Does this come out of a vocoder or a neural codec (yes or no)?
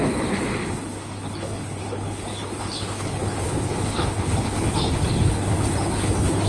yes